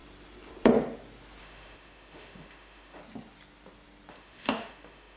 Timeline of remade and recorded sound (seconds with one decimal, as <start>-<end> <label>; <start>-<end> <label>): 0.0-1.4 recorded; 1.4-3.0 remade; 3.0-4.1 recorded; 4.1-5.2 remade